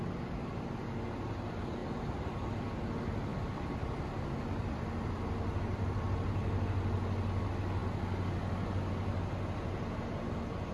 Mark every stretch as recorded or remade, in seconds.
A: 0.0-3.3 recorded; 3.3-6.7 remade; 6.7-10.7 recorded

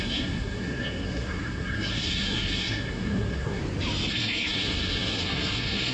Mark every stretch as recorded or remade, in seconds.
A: 0.0-3.6 remade; 3.6-4.1 recorded; 4.1-5.9 remade

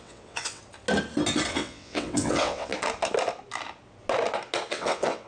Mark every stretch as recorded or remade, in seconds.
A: 0.0-0.6 remade; 0.6-1.5 recorded; 1.5-2.7 remade; 2.7-4.7 recorded; 4.7-5.3 remade

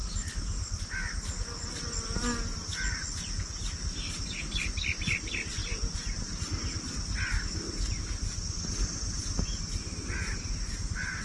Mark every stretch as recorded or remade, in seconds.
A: 0.0-11.2 recorded